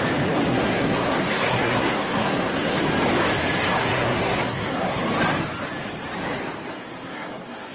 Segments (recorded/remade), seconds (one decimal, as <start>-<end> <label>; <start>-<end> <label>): 0.0-0.5 recorded; 0.5-2.9 remade; 2.9-3.8 recorded; 3.8-5.0 remade; 5.0-6.7 recorded; 6.7-7.7 remade